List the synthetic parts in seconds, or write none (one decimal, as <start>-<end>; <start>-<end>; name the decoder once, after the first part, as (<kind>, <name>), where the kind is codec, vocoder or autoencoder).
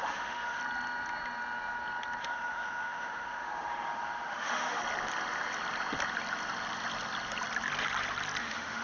0.0-0.6 (autoencoder, DAC-VAE); 2.2-4.8; 8.4-8.8